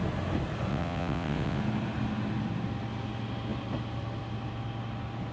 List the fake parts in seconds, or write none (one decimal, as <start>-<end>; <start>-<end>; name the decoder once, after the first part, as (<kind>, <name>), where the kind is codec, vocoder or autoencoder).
0.7-1.6 (vocoder, WaveNeXt)